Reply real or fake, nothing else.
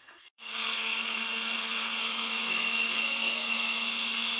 fake